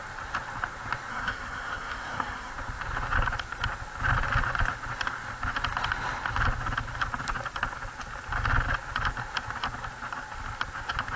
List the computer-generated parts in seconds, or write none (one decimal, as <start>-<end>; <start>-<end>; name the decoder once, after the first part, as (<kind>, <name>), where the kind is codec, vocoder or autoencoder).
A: 1.1-2.5 (codec, SNAC)